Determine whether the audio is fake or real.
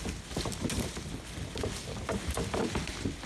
real